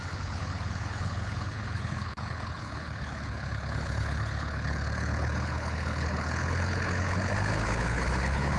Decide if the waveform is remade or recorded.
remade